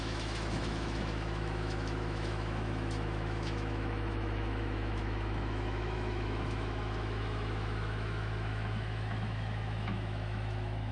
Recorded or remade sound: remade